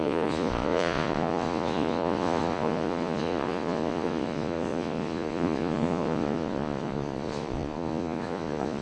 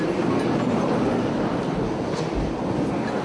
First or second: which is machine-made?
first